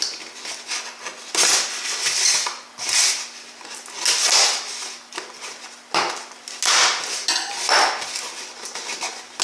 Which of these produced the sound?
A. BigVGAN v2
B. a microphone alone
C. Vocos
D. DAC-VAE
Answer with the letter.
B